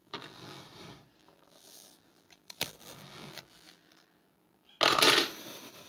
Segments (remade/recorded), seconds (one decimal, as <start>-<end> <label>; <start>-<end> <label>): 0.0-0.6 remade; 0.6-1.2 recorded; 1.2-4.7 remade; 4.7-5.9 recorded